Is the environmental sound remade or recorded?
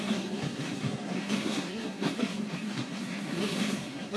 remade